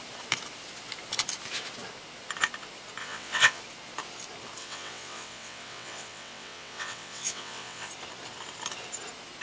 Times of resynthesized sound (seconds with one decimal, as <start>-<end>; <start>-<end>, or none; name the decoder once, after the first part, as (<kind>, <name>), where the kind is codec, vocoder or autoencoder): 3.0-3.6 (vocoder, WaveNeXt); 4.6-7.9